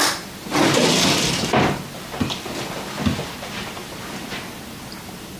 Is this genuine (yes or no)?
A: no